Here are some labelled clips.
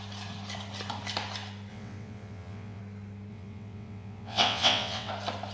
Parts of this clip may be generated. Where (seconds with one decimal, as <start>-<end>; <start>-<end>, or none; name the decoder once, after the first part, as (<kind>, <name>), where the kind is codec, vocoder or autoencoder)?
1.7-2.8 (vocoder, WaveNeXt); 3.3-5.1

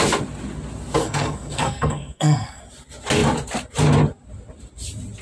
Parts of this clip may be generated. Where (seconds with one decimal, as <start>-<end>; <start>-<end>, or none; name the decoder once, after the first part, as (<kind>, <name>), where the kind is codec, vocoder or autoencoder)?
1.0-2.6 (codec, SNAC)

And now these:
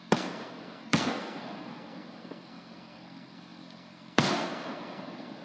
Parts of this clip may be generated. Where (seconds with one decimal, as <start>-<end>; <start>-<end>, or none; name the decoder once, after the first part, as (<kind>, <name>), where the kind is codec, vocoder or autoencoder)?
0.0-5.4 (codec, SNAC)